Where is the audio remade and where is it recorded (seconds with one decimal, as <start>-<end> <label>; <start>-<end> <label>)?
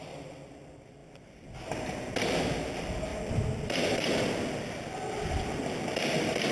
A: 0.0-1.0 recorded; 1.0-1.8 remade; 1.8-3.1 recorded; 3.1-4.2 remade; 4.2-6.5 recorded